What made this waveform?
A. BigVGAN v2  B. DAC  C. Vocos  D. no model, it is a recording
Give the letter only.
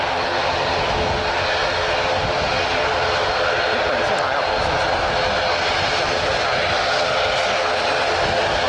D